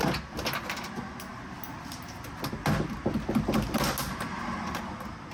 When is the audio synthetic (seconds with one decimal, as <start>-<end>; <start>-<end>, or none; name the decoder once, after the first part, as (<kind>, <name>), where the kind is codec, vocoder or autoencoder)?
none